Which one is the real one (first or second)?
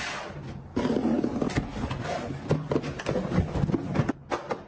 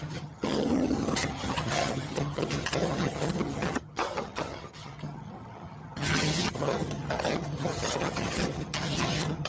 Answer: first